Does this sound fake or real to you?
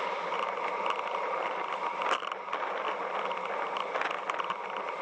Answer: real